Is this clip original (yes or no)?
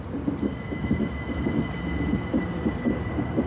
yes